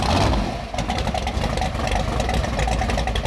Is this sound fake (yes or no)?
no